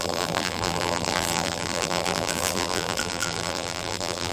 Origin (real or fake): fake